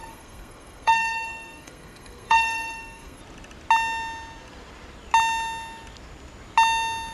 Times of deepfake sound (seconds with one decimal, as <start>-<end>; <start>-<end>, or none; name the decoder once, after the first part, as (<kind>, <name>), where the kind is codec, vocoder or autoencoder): 0.0-3.2 (codec, SNAC)